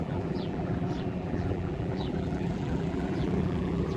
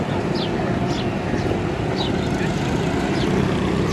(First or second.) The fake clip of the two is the first